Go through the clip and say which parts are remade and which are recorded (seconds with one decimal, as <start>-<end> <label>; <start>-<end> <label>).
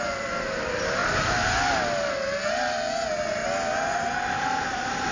0.0-5.1 recorded